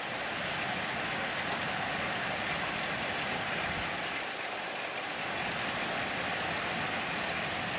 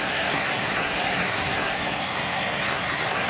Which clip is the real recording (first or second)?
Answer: first